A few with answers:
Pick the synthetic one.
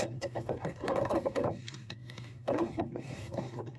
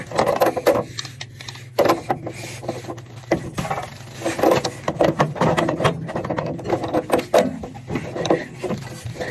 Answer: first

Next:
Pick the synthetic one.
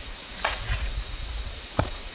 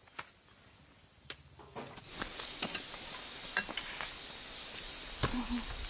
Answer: first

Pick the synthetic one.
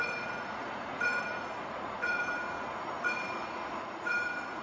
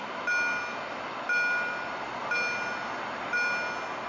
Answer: first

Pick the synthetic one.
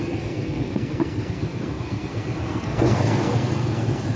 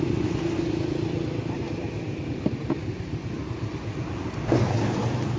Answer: first